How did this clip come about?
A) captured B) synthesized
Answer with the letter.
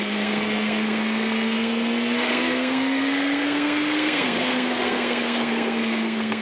B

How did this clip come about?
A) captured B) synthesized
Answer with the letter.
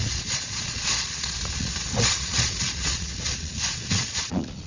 B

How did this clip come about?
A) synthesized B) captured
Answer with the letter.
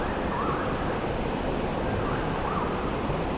B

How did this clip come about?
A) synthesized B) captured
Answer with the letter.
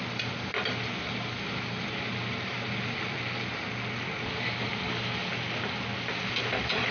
B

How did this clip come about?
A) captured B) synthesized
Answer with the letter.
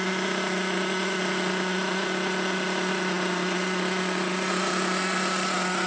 A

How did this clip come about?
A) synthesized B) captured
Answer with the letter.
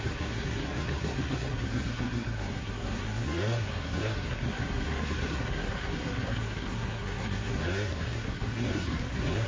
A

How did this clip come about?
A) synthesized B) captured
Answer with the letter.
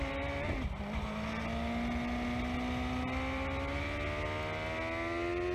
B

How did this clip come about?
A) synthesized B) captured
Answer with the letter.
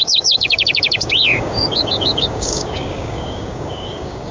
A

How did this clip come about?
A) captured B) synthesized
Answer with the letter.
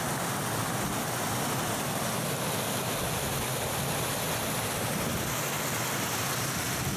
A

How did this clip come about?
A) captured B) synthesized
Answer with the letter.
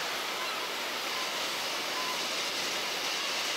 A